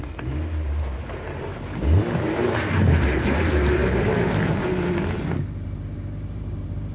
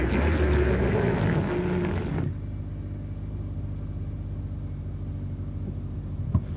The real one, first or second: second